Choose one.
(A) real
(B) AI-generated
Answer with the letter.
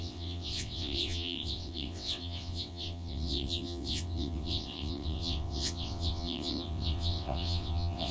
B